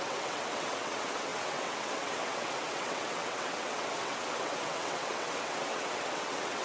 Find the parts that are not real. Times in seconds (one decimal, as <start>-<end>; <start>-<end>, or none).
0.0-6.6